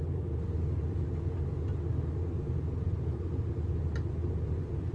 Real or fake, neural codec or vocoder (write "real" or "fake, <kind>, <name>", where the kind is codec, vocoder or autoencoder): real